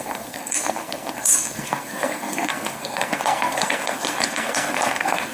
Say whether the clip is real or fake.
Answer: fake